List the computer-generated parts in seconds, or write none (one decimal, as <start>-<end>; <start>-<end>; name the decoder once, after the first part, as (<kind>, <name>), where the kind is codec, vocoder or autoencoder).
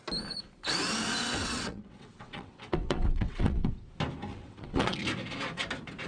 1.4-3.9 (vocoder, WaveNeXt); 4.3-5.0